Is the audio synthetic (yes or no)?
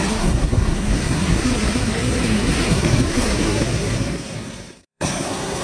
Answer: yes